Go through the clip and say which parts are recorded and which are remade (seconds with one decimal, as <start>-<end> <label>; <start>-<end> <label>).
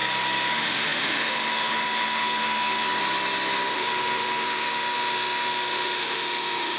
0.0-0.5 recorded; 0.5-3.0 remade; 3.0-3.7 recorded; 3.7-6.8 remade